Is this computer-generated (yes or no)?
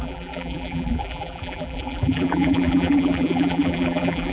yes